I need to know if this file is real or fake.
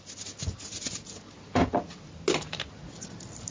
real